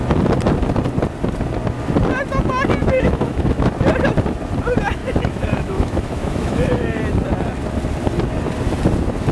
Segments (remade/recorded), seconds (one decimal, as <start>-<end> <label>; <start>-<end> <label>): 0.0-2.8 recorded; 2.8-3.7 remade; 3.7-5.0 recorded; 5.0-7.0 remade; 7.0-9.3 recorded